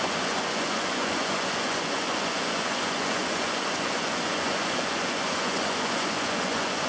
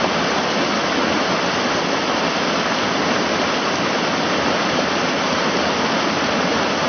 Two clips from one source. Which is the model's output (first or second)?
first